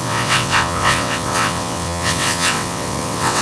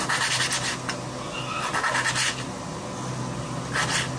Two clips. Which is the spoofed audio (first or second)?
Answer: first